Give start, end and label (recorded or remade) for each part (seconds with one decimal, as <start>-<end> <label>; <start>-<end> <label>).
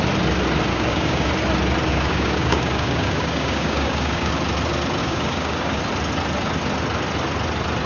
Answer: 0.0-0.7 recorded; 0.7-1.3 remade; 1.3-1.9 recorded; 1.9-4.3 remade; 4.3-5.0 recorded; 5.0-5.8 remade; 5.8-7.9 recorded